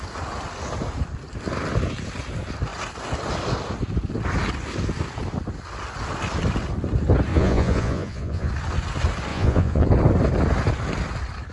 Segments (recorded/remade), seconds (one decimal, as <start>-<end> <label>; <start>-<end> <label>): 0.0-7.3 recorded; 7.3-8.5 remade; 8.5-9.3 recorded; 9.3-9.9 remade; 9.9-11.5 recorded